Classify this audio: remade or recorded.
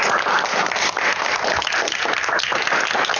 recorded